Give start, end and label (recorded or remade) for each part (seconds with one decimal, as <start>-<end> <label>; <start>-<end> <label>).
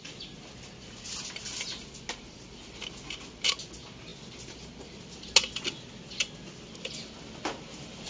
0.0-8.1 recorded